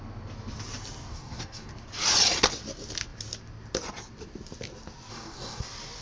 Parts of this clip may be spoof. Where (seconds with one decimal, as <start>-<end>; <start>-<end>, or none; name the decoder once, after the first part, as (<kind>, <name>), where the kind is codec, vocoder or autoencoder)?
1.1-1.7 (codec, DAC); 5.1-5.6